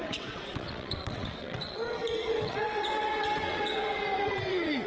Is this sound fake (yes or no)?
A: yes